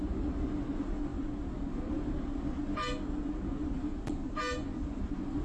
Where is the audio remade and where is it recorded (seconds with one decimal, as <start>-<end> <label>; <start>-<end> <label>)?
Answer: 0.0-5.4 recorded